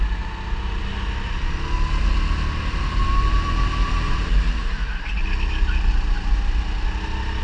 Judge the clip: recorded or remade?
recorded